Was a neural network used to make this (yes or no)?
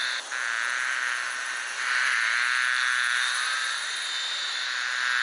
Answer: no